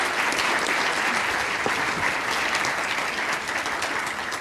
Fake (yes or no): no